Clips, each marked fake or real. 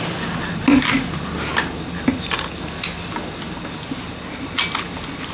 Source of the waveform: real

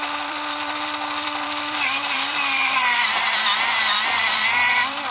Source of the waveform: fake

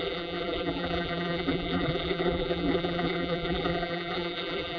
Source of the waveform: fake